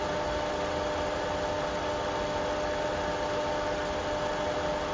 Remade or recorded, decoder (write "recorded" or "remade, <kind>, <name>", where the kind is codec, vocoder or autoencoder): recorded